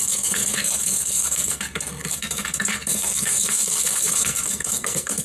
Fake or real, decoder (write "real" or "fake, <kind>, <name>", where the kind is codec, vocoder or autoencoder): fake, codec, SNAC